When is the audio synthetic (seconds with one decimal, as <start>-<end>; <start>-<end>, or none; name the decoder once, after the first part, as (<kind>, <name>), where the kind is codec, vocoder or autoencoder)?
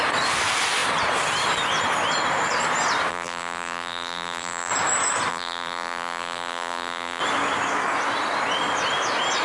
3.1-4.7 (vocoder, BigVGAN v2); 5.3-7.2